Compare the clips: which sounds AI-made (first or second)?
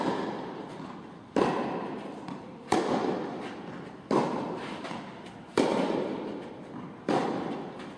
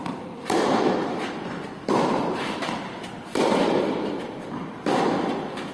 second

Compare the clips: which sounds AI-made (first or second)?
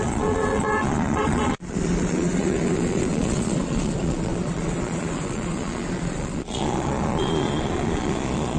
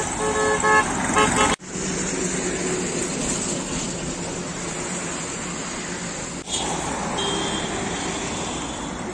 first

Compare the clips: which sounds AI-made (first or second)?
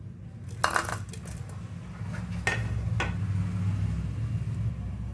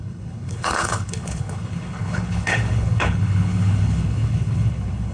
second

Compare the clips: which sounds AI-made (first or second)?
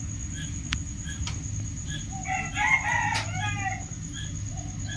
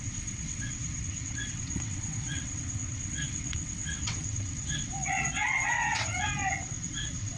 second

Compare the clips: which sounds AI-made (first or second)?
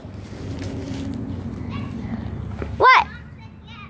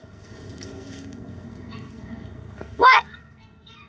second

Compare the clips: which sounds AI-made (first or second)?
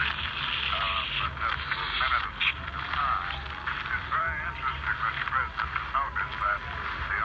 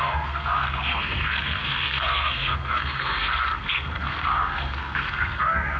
second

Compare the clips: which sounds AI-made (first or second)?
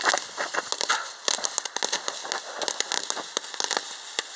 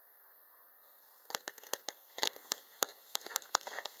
second